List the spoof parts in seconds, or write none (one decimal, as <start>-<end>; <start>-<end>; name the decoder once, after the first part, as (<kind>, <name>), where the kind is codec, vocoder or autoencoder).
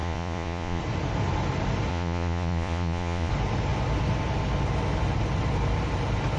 0.0-0.8 (vocoder, Vocos); 1.9-3.3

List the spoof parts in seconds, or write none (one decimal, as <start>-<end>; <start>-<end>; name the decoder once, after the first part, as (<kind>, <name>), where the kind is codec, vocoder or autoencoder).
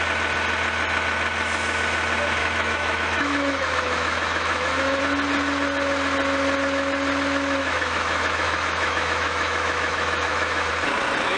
2.4-5.0 (autoencoder, DAC-VAE); 7.6-10.7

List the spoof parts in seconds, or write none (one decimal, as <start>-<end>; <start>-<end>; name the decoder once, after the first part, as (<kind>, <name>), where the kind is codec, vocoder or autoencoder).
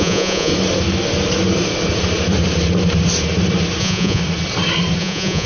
0.0-0.5 (vocoder, Vocos); 3.8-4.2; 5.0-5.5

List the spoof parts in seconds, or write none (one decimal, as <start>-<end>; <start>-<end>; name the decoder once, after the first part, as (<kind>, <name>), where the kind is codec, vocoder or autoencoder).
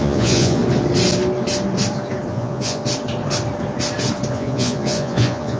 0.0-0.6 (vocoder, Vocos); 2.3-2.8; 4.3-5.6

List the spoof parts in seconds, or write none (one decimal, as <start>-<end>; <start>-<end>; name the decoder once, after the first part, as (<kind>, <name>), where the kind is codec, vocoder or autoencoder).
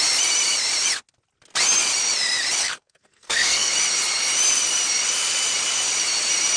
2.6-3.7 (codec, SNAC)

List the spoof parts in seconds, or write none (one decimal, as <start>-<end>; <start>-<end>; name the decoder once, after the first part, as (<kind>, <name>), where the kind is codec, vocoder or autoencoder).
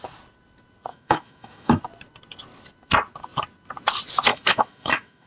0.9-1.8 (autoencoder, DAC-VAE); 4.3-5.3